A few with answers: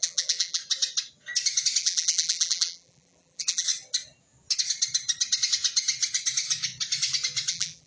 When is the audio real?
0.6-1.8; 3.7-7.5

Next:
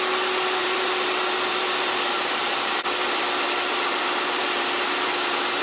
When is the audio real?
0.0-0.6; 4.0-4.4